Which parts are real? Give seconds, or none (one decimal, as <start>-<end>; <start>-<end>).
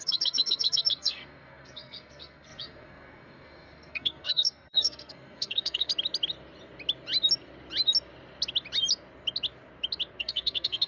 5.9-10.2